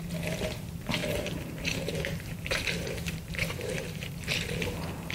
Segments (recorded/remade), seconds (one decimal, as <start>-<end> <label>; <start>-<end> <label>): 0.0-1.0 recorded; 1.0-4.1 remade; 4.1-5.1 recorded